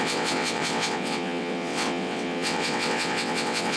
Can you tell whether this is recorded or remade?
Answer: remade